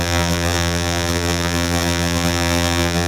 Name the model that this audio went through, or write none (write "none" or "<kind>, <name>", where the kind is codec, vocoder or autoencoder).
vocoder, BigVGAN v2